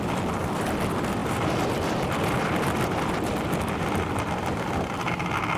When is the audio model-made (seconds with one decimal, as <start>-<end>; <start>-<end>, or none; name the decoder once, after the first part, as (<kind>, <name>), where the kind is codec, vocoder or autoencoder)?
1.2-2.8 (vocoder, BigVGAN v2)